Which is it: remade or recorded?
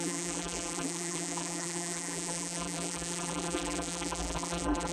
remade